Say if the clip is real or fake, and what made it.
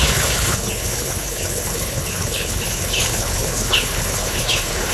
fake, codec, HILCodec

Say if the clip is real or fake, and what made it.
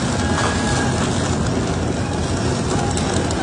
real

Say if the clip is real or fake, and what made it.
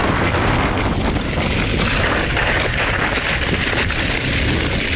real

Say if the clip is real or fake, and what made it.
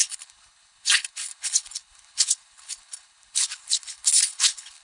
fake, codec, HILCodec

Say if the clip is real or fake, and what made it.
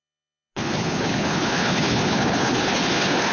fake, codec, HILCodec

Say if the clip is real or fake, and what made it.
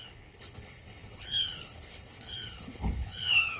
fake, codec, HILCodec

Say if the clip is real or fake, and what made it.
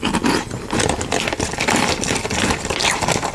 real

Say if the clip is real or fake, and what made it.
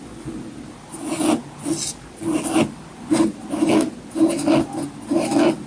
real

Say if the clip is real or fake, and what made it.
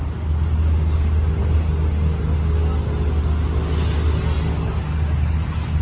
real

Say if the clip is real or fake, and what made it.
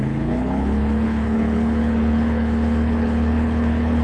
fake, codec, HILCodec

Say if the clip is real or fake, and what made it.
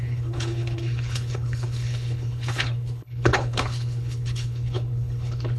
fake, codec, HILCodec